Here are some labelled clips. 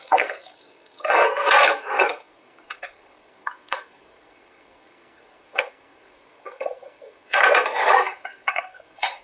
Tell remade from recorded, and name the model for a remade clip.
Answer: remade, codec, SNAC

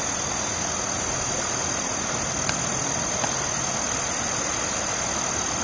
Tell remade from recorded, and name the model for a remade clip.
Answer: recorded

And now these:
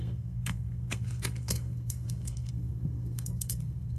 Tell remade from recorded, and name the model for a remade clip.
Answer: remade, codec, SNAC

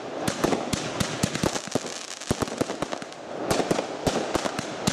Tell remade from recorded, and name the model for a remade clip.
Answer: recorded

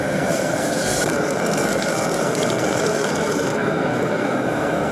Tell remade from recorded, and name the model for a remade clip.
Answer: remade, codec, SNAC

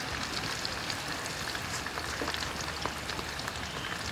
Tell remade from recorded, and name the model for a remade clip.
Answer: recorded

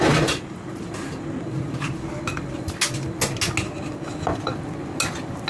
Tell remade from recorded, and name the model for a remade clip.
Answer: recorded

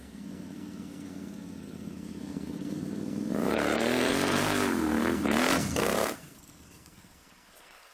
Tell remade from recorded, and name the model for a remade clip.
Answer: remade, codec, SNAC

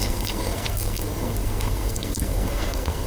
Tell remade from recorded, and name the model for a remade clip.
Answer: remade, codec, SNAC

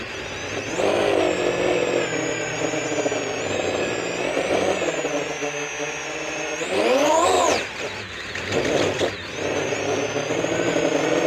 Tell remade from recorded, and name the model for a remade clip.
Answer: recorded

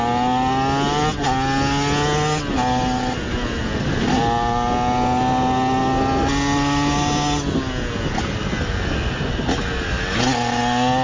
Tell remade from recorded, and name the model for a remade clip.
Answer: recorded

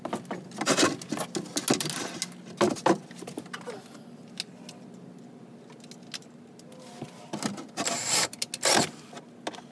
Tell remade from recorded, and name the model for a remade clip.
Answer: recorded